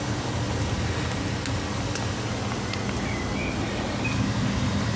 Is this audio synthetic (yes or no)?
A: no